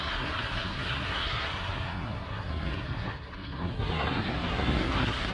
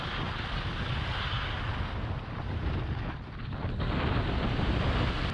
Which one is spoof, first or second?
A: first